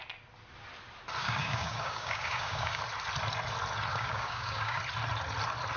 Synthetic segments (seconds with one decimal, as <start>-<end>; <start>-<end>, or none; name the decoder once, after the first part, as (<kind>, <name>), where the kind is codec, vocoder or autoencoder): 1.2-2.8 (codec, DAC); 3.9-4.8